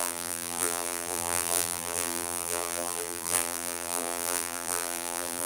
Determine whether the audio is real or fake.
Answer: fake